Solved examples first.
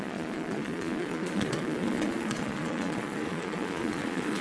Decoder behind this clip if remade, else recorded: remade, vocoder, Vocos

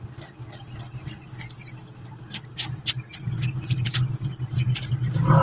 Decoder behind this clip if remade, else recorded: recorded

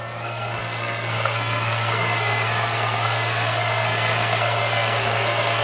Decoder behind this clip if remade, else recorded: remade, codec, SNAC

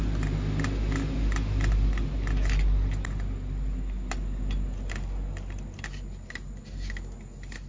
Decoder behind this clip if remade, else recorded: recorded